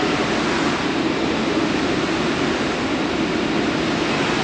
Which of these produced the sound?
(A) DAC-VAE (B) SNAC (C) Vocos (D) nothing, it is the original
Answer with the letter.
D